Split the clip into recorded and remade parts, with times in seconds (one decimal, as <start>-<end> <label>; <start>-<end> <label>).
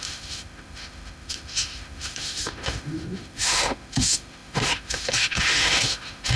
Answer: 0.0-6.4 remade